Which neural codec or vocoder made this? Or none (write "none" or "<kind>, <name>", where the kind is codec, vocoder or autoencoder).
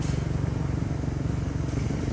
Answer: none